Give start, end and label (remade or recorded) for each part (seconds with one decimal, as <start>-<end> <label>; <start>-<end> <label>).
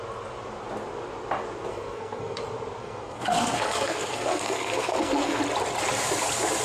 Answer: 0.0-1.7 recorded; 1.7-2.4 remade; 2.4-2.8 recorded; 2.8-5.4 remade; 5.4-6.6 recorded